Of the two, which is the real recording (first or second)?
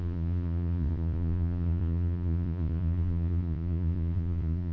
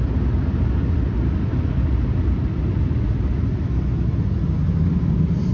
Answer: second